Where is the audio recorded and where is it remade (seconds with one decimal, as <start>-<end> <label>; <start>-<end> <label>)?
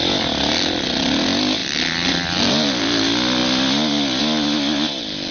0.0-5.3 recorded